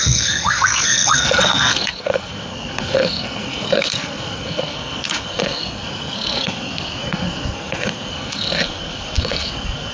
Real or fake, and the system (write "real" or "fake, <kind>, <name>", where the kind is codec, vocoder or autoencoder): fake, codec, SNAC